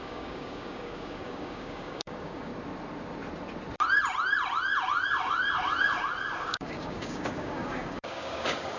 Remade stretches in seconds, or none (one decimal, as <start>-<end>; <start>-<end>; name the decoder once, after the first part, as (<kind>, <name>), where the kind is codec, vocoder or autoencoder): 0.0-2.5 (codec, DAC); 6.4-8.8